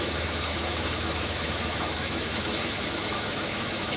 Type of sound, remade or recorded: remade